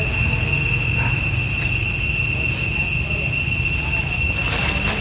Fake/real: real